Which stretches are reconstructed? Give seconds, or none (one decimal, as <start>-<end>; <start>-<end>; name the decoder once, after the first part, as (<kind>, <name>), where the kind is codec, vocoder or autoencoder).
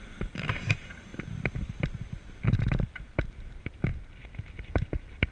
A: 0.0-3.9 (vocoder, BigVGAN v2); 4.5-5.3